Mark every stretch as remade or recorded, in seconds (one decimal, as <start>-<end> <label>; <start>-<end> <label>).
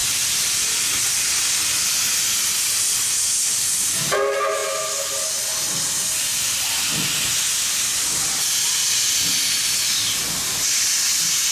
0.0-0.6 remade; 0.6-11.5 recorded